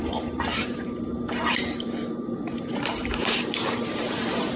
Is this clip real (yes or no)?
no